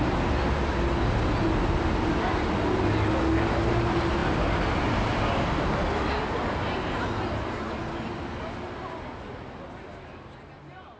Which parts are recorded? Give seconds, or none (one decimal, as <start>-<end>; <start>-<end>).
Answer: 0.0-11.0